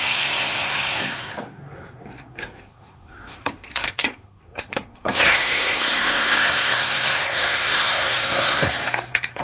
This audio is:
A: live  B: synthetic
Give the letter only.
B